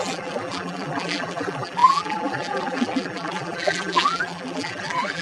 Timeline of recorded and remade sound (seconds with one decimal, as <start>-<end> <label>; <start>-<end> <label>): 0.0-5.2 remade